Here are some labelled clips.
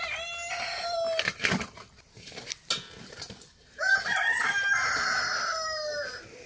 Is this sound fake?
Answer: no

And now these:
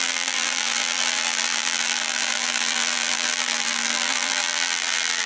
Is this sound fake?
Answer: yes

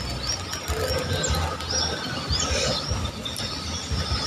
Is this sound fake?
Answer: no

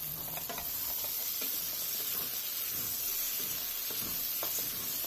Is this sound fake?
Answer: no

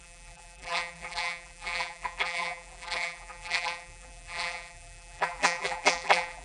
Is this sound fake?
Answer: yes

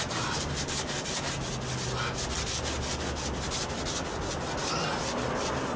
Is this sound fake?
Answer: no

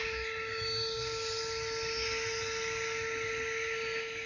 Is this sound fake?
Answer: no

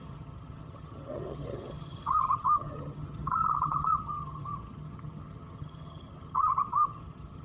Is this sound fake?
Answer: yes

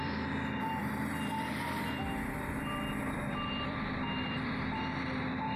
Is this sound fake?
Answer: yes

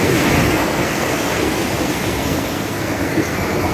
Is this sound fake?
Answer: yes